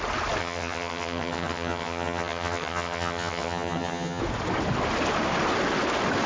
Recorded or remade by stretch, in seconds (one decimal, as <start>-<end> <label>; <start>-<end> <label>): 0.0-0.4 recorded; 0.4-4.2 remade; 4.2-6.3 recorded